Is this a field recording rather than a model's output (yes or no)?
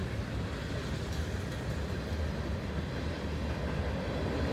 yes